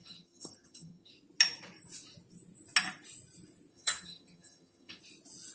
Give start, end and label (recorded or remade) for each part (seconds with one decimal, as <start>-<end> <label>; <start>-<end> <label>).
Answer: 0.0-1.1 remade; 1.1-3.7 recorded; 3.7-5.0 remade; 5.0-5.5 recorded